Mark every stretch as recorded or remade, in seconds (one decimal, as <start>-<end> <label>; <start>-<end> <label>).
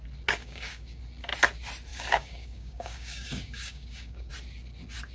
0.0-0.4 recorded; 0.4-1.0 remade; 1.0-1.9 recorded; 1.9-4.3 remade; 4.3-5.1 recorded